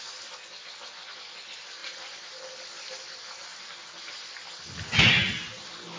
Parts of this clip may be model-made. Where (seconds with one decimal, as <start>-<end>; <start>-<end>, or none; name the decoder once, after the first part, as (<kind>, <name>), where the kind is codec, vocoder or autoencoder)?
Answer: 1.8-2.3 (vocoder, BigVGAN v2); 3.5-4.0